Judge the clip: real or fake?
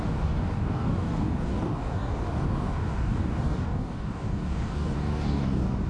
fake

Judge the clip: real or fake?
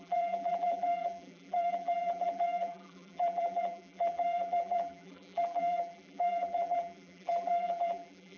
fake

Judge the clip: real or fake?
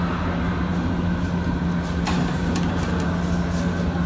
real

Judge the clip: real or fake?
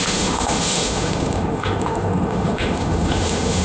fake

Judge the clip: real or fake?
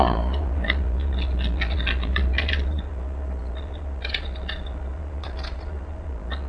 fake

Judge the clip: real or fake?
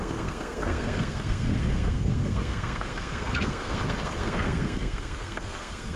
fake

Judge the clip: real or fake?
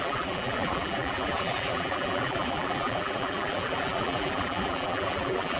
fake